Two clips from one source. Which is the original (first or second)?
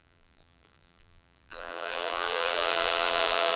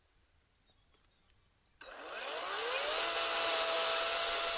second